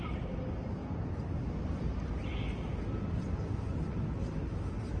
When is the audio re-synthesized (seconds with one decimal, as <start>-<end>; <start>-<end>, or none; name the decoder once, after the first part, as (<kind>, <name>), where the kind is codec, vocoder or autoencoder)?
none